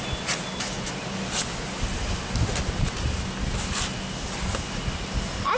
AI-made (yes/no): no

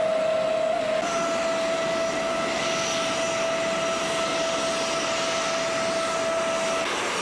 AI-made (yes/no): no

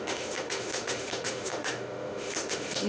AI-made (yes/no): yes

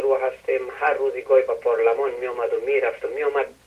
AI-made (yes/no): no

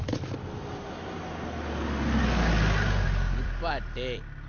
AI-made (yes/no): no